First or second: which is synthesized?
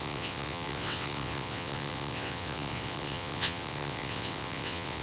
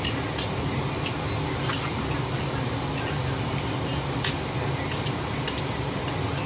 first